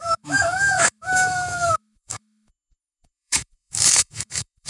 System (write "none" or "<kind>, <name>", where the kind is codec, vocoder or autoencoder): autoencoder, DAC-VAE